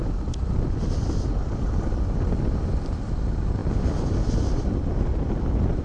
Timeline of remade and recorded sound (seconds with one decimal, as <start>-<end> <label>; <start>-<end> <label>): 0.0-5.8 recorded